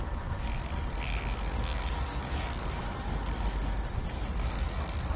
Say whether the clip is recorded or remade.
recorded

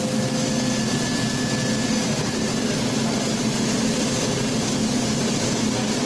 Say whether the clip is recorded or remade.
recorded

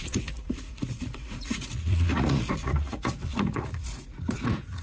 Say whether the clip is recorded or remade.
remade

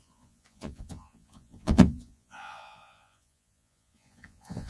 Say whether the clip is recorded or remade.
remade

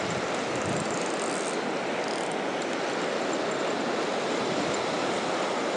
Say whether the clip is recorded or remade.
recorded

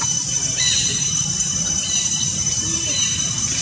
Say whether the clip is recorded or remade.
recorded